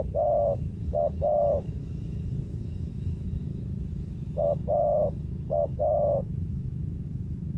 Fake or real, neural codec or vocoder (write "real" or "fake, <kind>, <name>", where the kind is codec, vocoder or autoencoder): fake, autoencoder, DAC-VAE